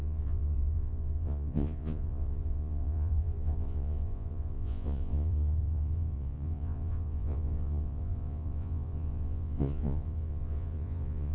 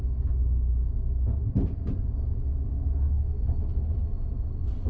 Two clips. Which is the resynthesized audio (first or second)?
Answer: first